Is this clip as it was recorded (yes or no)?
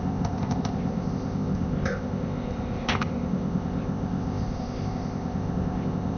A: no